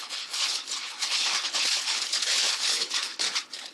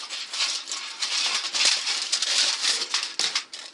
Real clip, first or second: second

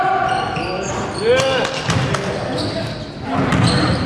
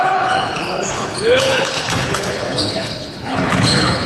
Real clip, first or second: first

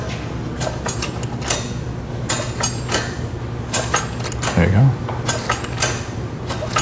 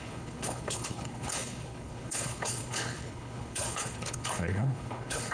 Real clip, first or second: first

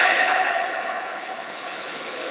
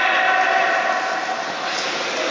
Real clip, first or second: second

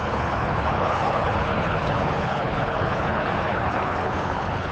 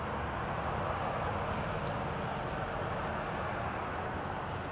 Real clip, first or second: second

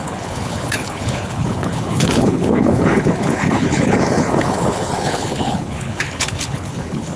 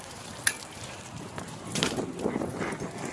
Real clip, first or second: second